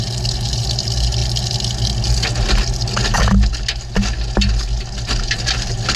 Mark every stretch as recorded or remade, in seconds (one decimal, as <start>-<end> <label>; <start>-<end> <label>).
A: 0.0-6.0 recorded